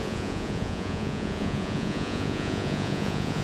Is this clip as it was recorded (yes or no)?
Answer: no